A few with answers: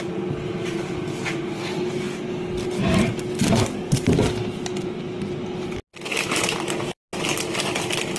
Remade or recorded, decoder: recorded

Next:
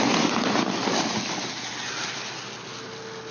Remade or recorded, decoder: recorded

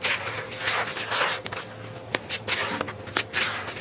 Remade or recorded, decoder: recorded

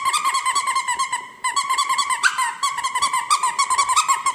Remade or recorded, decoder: remade, vocoder, BigVGAN v2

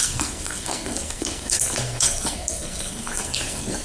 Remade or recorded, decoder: remade, codec, SNAC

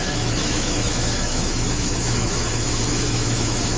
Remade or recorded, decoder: remade, autoencoder, DAC-VAE